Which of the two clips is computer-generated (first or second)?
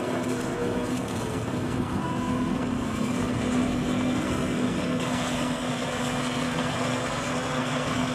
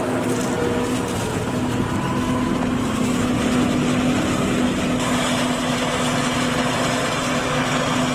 first